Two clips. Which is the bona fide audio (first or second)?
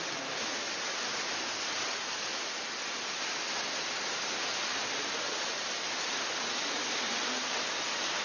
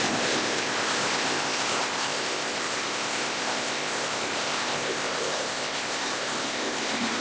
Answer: first